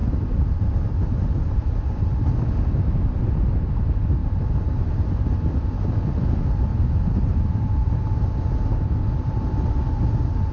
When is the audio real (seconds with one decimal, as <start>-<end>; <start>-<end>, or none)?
1.7-4.2; 7.9-10.5

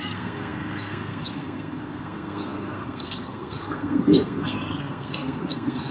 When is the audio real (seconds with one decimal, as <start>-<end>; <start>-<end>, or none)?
none